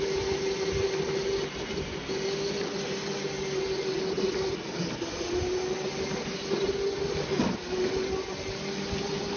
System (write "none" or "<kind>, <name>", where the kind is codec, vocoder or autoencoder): none